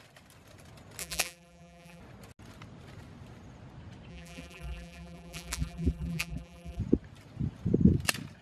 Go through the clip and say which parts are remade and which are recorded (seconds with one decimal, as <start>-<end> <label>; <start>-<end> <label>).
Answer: 0.0-1.0 recorded; 1.0-2.0 remade; 2.0-4.1 recorded; 4.1-6.8 remade; 6.8-8.4 recorded